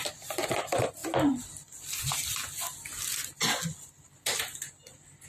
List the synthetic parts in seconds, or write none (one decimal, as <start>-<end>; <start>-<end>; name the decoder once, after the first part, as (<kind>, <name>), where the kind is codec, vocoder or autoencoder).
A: 0.0-1.0 (vocoder, BigVGAN v2); 2.0-2.4